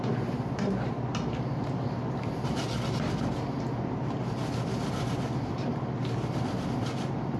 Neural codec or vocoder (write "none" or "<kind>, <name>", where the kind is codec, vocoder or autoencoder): none